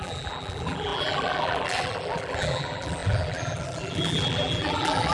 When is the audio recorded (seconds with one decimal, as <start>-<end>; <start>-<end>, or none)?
none